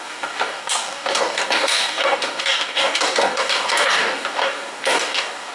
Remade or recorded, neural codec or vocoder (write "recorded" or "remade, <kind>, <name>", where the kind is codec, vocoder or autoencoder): remade, codec, DAC